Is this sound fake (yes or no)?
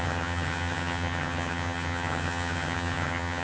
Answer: yes